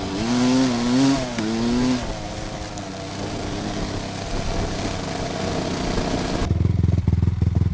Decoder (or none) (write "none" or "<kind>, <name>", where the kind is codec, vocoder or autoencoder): none